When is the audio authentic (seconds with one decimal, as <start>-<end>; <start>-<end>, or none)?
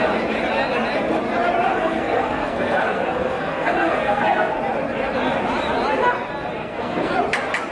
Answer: 0.0-1.7; 4.6-6.6; 7.1-7.7